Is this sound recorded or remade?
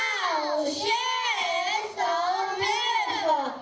recorded